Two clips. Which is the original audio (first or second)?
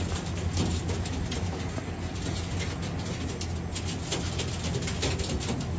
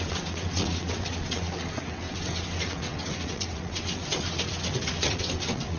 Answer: first